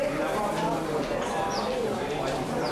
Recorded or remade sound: recorded